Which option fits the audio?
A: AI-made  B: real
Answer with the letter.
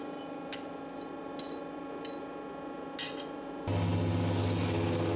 B